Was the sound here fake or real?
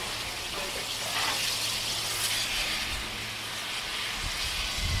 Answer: real